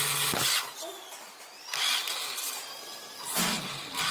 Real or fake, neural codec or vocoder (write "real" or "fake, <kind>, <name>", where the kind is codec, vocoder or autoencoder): real